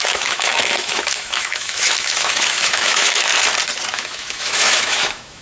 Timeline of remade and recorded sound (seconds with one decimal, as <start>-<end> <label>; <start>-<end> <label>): 0.0-3.3 remade; 3.3-3.9 recorded; 3.9-5.4 remade